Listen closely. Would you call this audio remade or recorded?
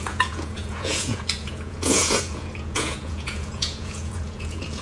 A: remade